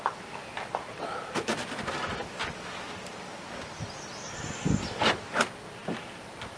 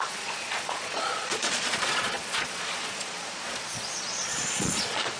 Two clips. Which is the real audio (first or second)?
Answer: first